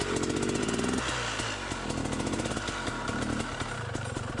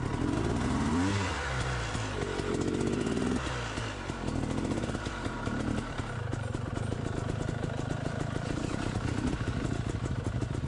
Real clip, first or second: first